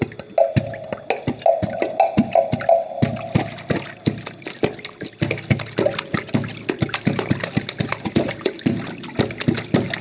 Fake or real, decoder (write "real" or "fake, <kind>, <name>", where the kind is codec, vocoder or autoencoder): real